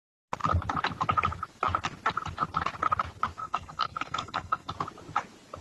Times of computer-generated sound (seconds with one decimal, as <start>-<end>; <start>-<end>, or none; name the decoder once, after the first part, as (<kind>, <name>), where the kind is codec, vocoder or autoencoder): 3.4-4.7 (codec, SNAC)